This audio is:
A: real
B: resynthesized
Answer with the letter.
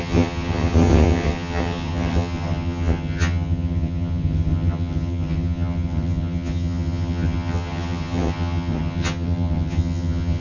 B